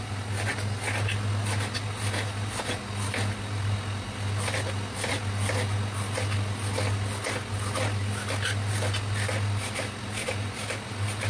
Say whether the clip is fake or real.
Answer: real